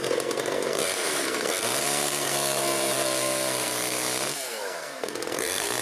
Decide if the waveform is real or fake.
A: fake